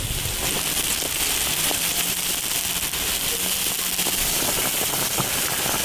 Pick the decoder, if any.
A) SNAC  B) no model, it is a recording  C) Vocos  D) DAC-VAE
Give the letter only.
B